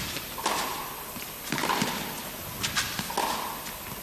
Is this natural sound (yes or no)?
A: yes